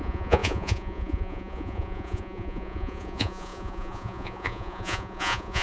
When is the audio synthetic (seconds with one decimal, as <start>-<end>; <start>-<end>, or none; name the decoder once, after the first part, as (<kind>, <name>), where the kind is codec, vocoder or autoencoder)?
0.0-5.6 (vocoder, Vocos)